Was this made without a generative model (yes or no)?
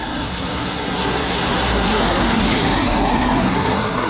no